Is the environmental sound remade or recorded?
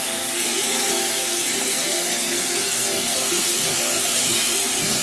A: remade